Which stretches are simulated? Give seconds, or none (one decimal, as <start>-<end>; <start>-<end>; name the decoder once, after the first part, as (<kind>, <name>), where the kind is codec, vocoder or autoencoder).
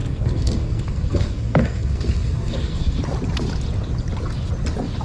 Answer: 0.0-3.0 (codec, SNAC)